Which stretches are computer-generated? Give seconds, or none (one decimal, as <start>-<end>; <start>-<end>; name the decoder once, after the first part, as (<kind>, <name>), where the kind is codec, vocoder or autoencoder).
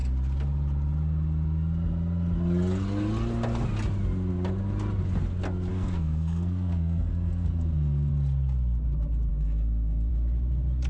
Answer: 5.7-8.1 (codec, SNAC); 9.3-10.1